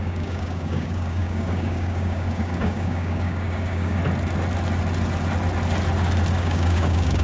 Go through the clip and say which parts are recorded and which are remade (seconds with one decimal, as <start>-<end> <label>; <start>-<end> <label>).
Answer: 0.0-4.0 remade; 4.0-6.3 recorded; 6.3-7.2 remade